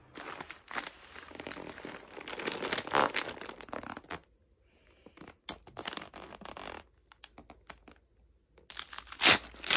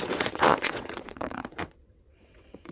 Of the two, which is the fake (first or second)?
second